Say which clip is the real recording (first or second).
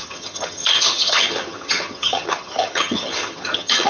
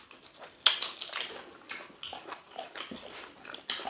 second